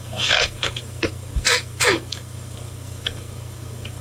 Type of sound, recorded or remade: remade